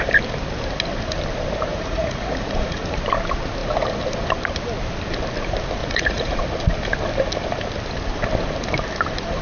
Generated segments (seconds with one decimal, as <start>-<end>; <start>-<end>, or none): 1.7-3.0; 5.8-6.4